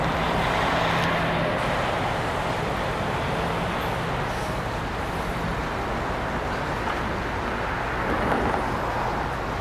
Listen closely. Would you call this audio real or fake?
real